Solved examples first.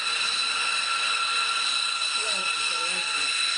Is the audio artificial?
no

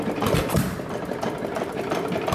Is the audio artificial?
yes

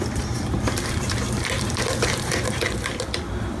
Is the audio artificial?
yes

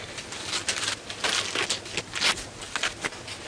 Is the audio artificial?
no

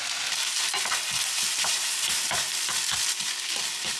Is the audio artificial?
no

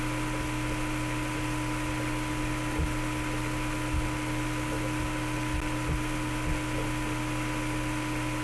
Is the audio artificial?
no